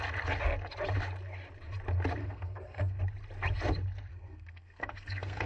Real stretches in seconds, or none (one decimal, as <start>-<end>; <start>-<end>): 0.0-2.2; 3.0-4.1